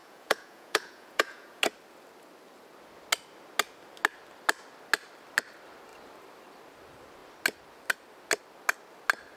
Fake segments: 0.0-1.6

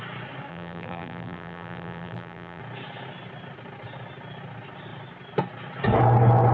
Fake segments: 0.5-2.6